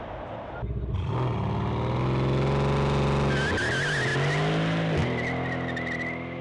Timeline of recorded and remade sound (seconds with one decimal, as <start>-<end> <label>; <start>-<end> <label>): 0.0-6.4 recorded